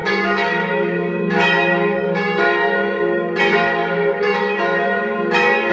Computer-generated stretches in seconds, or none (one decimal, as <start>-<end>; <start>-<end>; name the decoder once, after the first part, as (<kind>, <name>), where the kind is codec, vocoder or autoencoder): 0.0-5.7 (codec, DAC)